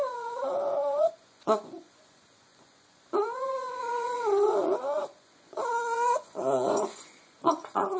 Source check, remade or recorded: remade